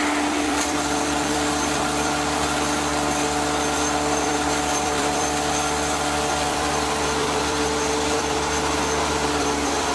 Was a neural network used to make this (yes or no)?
yes